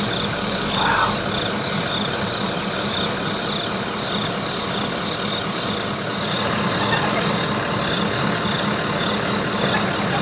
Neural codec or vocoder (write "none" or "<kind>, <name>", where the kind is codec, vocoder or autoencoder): none